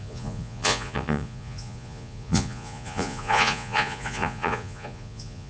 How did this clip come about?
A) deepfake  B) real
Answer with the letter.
A